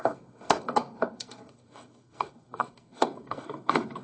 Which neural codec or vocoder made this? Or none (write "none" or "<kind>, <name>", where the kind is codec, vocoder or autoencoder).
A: codec, SNAC